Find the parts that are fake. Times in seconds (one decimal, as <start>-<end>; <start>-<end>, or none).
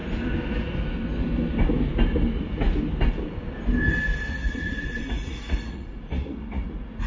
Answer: 4.3-7.1